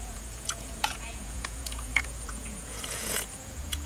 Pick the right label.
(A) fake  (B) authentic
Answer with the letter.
A